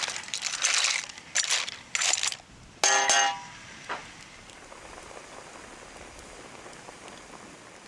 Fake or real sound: real